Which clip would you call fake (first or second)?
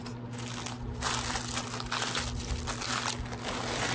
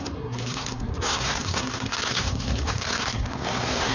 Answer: second